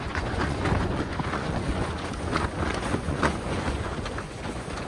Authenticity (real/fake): fake